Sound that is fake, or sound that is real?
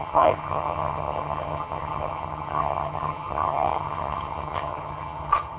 fake